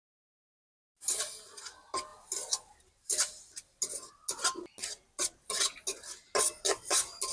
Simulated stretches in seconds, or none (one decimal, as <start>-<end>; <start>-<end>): none